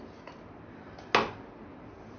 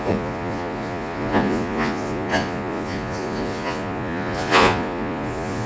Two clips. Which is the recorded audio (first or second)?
first